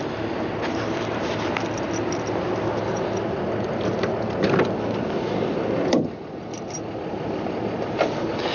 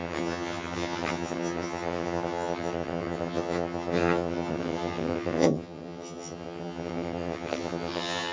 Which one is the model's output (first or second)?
second